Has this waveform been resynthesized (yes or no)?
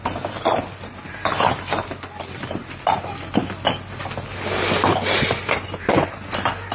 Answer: no